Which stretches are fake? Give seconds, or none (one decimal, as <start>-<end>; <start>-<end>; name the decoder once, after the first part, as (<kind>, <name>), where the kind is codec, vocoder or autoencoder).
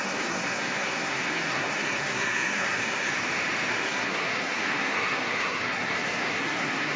0.0-3.1 (codec, SNAC); 3.7-7.0